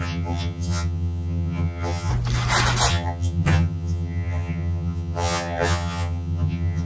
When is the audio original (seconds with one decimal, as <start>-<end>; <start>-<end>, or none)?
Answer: 2.1-2.9